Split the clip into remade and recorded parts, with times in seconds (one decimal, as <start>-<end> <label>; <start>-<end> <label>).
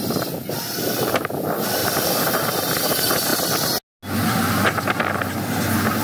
0.0-0.4 recorded; 0.4-1.3 remade; 1.3-1.8 recorded; 1.8-2.8 remade; 2.8-6.0 recorded